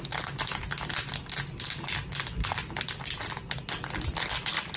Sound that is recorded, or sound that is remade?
recorded